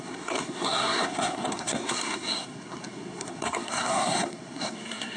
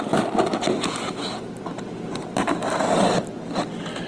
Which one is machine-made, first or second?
first